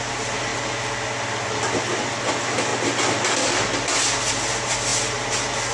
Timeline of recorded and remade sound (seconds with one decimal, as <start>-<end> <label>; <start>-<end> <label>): 0.0-5.7 recorded